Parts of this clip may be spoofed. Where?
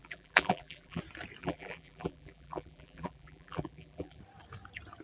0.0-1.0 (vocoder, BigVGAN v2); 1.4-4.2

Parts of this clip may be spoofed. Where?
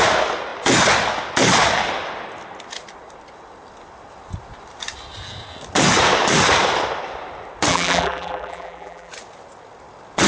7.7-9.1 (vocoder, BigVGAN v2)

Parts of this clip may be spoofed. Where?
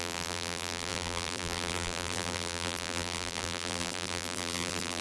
0.0-5.0 (vocoder, BigVGAN v2)